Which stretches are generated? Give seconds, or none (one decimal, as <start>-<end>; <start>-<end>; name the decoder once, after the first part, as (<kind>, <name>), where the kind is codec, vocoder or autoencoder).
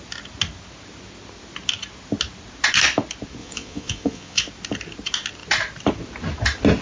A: 3.4-4.4 (vocoder, Vocos)